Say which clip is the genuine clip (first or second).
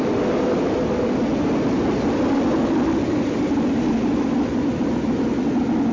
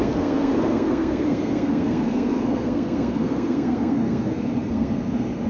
first